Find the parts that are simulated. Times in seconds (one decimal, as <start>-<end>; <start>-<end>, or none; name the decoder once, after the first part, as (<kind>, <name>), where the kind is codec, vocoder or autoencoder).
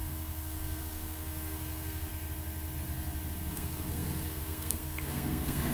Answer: 0.0-2.1 (codec, SNAC); 3.5-5.7